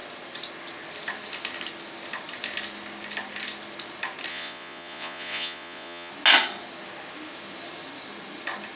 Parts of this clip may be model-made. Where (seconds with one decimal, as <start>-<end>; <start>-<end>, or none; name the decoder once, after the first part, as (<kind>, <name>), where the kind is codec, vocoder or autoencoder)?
4.3-6.1 (vocoder, Vocos)